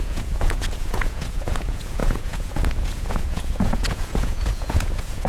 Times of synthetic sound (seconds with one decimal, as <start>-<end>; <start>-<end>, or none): 0.0-5.3